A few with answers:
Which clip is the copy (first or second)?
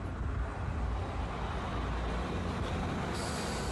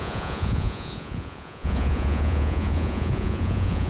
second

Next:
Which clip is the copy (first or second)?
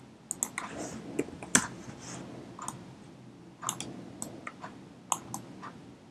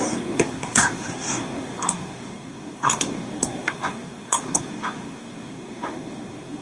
second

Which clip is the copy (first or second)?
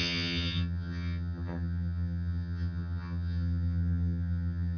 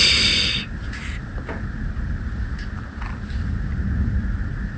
first